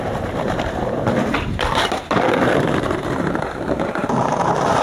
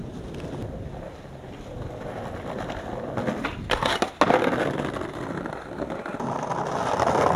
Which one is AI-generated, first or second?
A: first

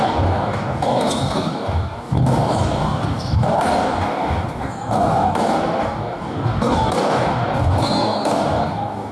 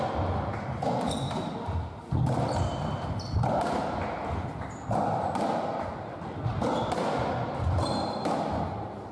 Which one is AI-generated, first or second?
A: first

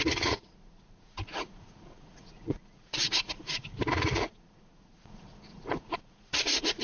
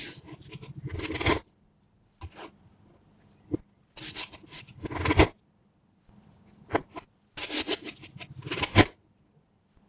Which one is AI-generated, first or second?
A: first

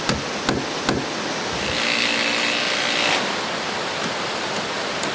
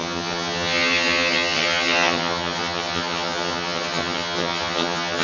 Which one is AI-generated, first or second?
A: second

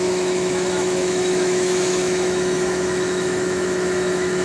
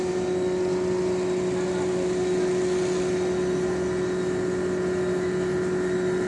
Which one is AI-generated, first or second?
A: first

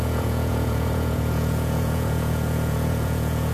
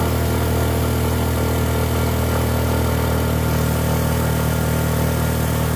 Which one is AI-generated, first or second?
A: first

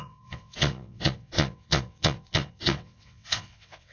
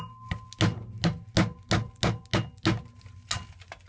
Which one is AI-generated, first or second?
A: first